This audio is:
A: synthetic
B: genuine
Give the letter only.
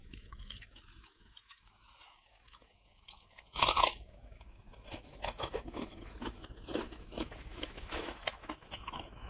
A